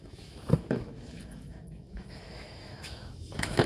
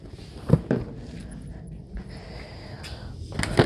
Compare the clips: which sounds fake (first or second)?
first